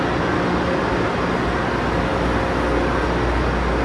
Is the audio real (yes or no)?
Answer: yes